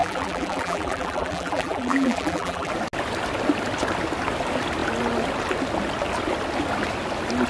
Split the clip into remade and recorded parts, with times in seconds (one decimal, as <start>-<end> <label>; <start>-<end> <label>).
0.0-2.7 remade; 2.7-7.5 recorded